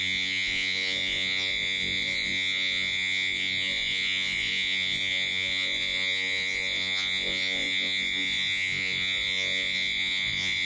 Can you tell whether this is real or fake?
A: fake